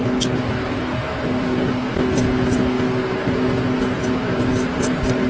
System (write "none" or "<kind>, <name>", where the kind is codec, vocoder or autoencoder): none